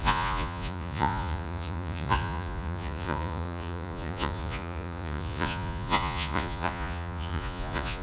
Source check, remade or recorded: remade